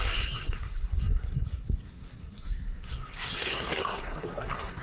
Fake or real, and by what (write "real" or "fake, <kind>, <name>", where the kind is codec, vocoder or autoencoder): fake, codec, SNAC